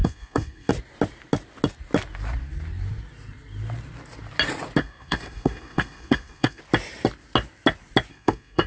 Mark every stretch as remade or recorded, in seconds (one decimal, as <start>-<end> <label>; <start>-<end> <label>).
0.0-0.7 remade; 0.7-4.8 recorded; 4.8-6.6 remade; 6.6-8.1 recorded; 8.1-8.7 remade